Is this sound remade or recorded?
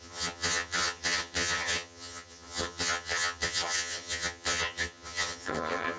remade